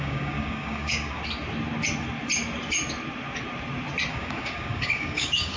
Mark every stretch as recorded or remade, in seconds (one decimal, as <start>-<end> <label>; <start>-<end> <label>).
0.0-1.2 remade; 1.2-4.1 recorded; 4.1-5.6 remade